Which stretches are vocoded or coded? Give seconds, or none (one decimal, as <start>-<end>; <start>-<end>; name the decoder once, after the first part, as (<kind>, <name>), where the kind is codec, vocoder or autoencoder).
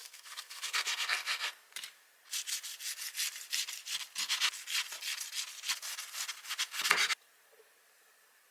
0.0-1.5 (codec, SNAC)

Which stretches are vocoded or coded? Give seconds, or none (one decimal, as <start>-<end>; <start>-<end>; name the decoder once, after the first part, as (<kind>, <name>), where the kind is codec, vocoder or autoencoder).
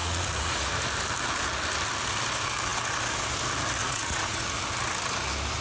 0.0-0.8 (vocoder, Vocos); 3.8-4.5